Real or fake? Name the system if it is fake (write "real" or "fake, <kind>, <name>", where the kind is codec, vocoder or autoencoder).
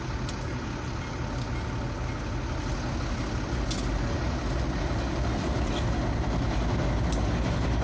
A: real